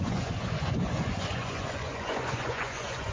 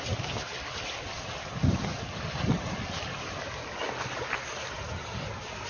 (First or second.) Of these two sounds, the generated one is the first